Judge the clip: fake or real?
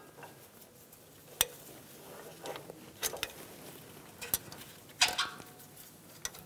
real